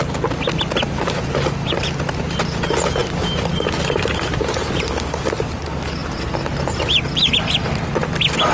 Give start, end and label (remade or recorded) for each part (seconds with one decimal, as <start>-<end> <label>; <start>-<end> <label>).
0.0-3.0 recorded; 3.0-4.9 remade; 4.9-8.5 recorded

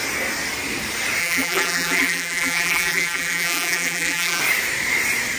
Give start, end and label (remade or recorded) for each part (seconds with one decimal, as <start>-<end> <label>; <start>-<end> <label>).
0.0-1.2 recorded; 1.2-4.4 remade; 4.4-5.4 recorded

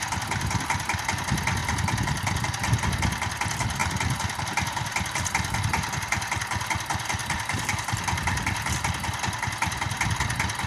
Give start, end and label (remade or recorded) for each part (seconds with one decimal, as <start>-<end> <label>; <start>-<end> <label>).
0.0-7.2 recorded; 7.2-8.8 remade; 8.8-10.7 recorded

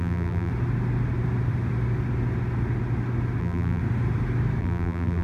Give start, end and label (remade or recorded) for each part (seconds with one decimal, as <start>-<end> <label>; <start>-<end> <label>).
0.0-0.5 remade; 0.5-3.4 recorded; 3.4-3.8 remade; 3.8-4.6 recorded; 4.6-5.2 remade

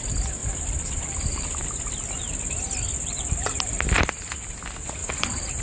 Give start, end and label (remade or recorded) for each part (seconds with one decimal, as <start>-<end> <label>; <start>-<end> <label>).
0.0-0.4 recorded; 0.4-3.8 remade; 3.8-5.0 recorded; 5.0-5.6 remade

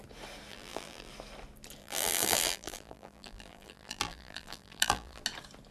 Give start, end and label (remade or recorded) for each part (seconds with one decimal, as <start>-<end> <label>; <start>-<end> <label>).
0.0-0.5 recorded; 0.5-1.1 remade; 1.1-1.8 recorded; 1.8-5.2 remade; 5.2-5.7 recorded